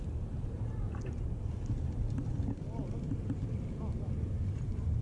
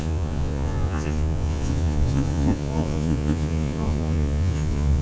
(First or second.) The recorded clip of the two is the first